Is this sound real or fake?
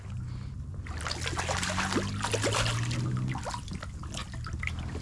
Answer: real